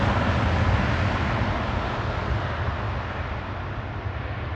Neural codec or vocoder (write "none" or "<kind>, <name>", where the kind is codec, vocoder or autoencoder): none